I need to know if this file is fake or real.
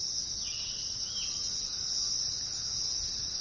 real